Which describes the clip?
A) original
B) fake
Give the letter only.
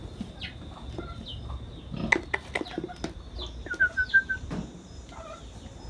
A